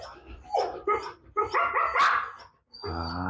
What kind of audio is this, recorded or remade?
recorded